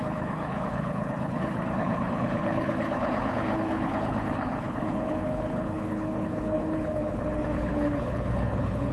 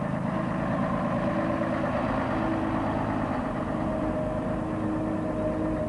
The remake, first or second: first